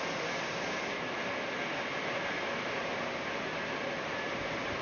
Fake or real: real